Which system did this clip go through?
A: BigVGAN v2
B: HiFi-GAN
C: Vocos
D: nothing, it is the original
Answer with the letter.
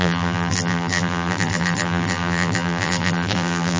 A